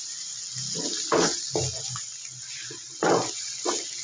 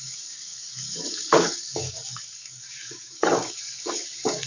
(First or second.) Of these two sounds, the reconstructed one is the second